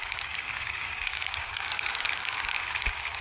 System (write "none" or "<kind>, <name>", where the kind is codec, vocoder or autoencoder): codec, DAC